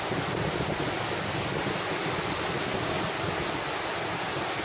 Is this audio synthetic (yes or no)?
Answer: no